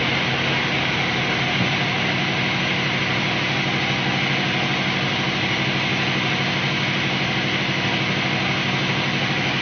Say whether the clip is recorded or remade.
recorded